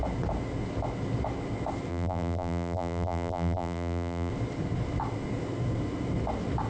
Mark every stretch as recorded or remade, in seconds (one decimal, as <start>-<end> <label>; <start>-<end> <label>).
0.0-1.9 recorded; 1.9-4.3 remade; 4.3-6.7 recorded